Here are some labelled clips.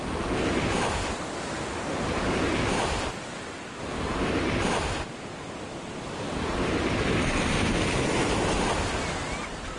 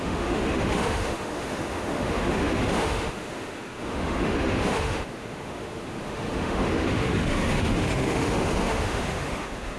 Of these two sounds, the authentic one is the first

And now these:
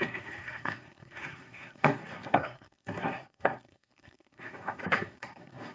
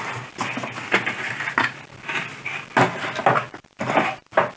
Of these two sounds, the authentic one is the second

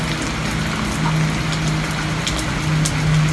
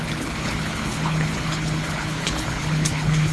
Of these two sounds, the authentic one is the first